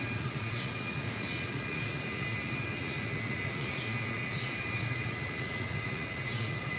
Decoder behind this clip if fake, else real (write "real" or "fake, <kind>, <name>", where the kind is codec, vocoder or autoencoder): fake, vocoder, Vocos